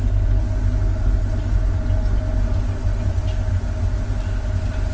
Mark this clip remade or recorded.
recorded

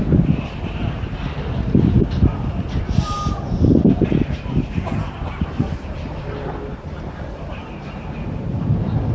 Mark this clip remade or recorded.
recorded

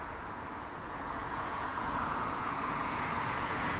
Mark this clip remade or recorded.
remade